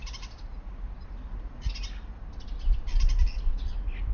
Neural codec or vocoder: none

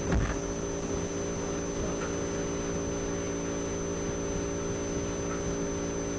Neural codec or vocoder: none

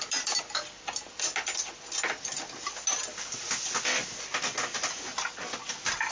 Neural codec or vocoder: none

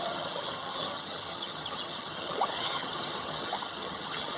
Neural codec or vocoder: vocoder, HiFi-GAN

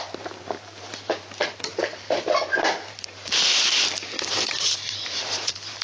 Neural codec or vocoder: vocoder, BigVGAN v2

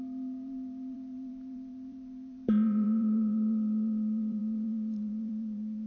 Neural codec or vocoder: vocoder, BigVGAN v2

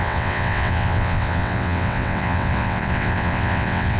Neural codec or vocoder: vocoder, WaveNeXt